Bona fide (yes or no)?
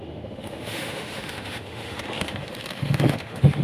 no